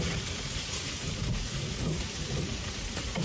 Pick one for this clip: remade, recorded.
remade